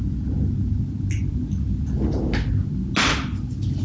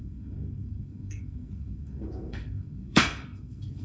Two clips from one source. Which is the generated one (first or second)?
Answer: second